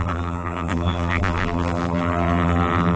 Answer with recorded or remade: remade